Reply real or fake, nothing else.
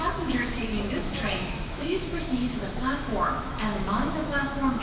fake